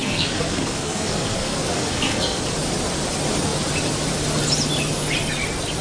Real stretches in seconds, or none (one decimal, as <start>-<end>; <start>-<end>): 2.4-5.8